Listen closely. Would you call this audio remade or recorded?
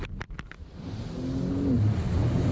recorded